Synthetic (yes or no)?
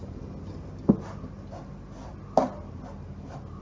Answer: no